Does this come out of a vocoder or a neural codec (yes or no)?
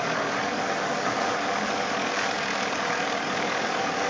yes